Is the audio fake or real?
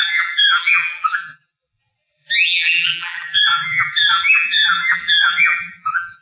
fake